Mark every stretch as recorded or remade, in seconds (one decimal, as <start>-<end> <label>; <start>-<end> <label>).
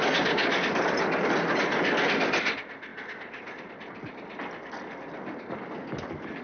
0.0-0.4 recorded; 0.4-1.3 remade; 1.3-6.4 recorded